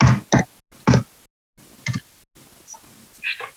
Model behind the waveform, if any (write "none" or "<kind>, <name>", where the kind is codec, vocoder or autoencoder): none